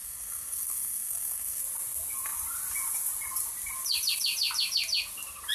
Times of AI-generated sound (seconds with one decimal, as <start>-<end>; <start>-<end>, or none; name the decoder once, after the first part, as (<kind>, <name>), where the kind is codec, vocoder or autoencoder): 0.0-1.6 (codec, SNAC)